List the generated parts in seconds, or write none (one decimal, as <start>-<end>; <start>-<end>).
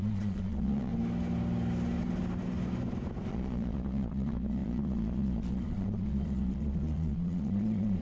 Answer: 0.0-0.9; 3.3-8.0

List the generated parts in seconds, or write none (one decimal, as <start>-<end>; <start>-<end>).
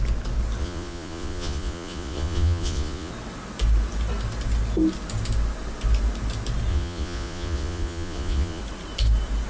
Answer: 0.6-3.1; 6.7-8.6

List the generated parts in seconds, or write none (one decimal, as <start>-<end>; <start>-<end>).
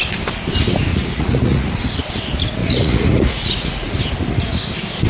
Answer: 0.9-1.8; 2.6-4.0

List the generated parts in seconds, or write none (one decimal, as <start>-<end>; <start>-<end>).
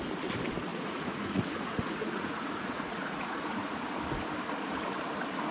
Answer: 0.7-4.0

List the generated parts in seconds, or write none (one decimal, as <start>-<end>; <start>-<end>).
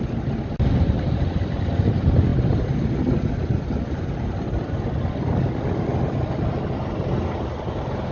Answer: none